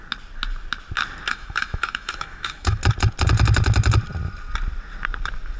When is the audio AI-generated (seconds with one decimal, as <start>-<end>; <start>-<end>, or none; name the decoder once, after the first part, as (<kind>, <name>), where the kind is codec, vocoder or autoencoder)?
1.3-2.8 (autoencoder, DAC-VAE)